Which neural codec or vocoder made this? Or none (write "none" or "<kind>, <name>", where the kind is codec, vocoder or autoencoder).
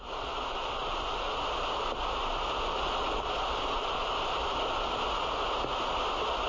none